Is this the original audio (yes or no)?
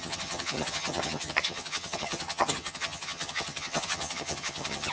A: no